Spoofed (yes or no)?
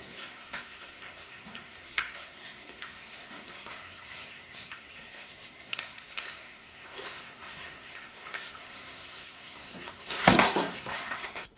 yes